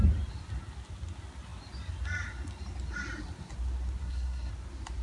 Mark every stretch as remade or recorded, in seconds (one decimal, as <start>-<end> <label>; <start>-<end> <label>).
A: 0.0-4.0 recorded; 4.0-4.5 remade; 4.5-5.0 recorded